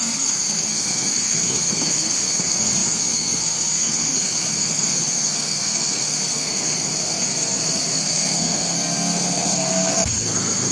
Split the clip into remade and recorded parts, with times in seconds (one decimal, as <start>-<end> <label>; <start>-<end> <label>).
0.0-10.7 remade